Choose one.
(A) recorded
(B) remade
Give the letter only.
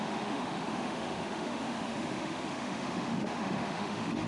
B